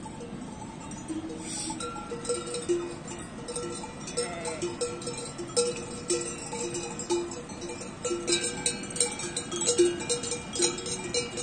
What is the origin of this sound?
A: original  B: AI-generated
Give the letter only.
A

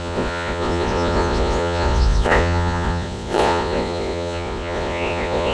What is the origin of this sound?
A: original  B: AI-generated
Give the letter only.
B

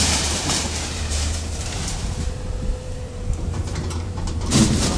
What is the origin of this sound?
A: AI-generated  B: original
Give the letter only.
A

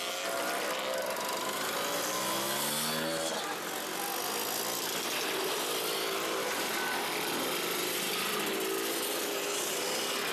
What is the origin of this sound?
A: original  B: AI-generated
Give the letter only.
A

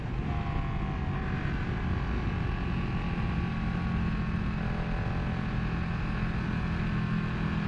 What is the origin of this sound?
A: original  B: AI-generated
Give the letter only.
A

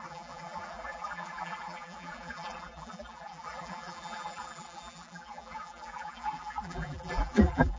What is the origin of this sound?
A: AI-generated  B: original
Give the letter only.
A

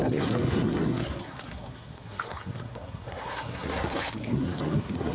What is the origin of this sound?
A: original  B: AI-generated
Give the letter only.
B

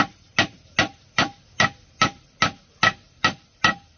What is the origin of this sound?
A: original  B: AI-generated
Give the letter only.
A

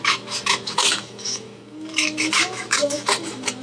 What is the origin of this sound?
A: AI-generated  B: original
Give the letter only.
A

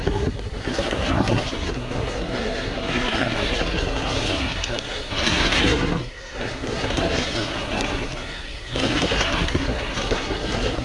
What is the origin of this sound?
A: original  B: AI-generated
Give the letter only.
B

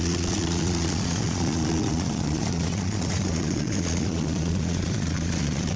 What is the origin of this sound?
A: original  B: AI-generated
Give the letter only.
B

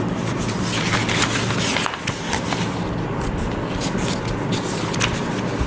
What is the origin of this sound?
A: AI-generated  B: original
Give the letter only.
B